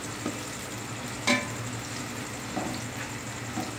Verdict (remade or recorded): recorded